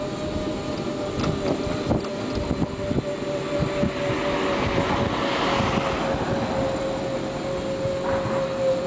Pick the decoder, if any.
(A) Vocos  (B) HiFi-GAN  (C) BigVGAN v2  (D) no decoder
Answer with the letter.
D